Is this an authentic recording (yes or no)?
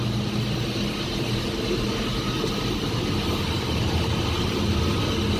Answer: yes